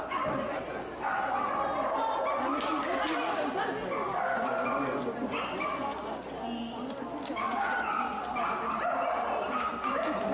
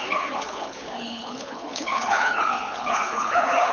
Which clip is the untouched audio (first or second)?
first